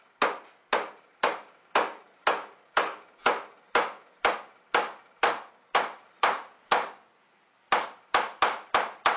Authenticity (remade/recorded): recorded